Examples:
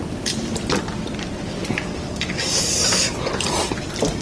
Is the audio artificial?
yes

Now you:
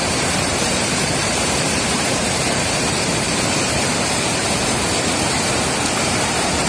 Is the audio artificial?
yes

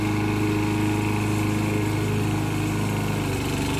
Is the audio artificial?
no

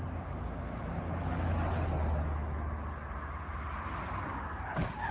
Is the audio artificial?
no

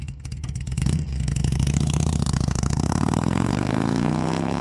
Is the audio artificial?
yes